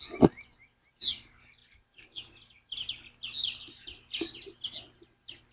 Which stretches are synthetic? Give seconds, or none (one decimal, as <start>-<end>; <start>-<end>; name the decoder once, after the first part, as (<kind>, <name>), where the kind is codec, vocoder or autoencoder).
none